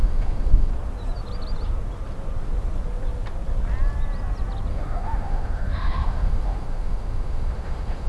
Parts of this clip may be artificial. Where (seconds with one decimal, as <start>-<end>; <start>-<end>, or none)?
0.0-0.7; 4.7-8.1